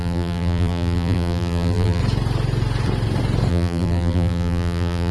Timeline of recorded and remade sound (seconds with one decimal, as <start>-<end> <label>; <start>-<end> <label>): 0.0-2.0 remade; 2.0-3.5 recorded; 3.5-5.1 remade